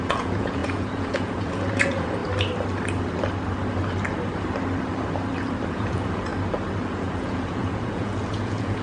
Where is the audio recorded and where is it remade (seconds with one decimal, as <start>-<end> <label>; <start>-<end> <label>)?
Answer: 0.0-2.2 remade; 2.2-5.7 recorded; 5.7-6.3 remade; 6.3-6.8 recorded; 6.8-8.8 remade

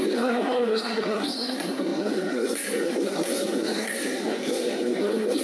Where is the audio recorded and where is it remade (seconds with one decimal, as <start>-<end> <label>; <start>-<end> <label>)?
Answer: 0.0-5.4 remade

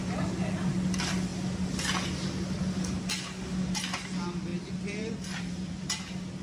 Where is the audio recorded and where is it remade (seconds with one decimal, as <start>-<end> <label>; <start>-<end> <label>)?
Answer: 0.0-4.5 recorded; 4.5-6.0 remade; 6.0-6.4 recorded